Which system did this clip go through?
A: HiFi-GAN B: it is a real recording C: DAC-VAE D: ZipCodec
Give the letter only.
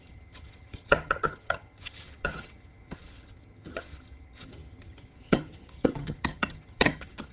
A